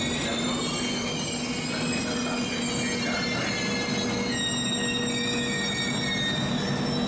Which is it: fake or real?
real